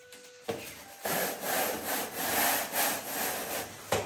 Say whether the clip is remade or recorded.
recorded